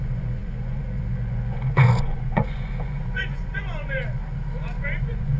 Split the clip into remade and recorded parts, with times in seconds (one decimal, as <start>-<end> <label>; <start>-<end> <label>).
0.0-4.2 remade; 4.2-4.8 recorded; 4.8-5.4 remade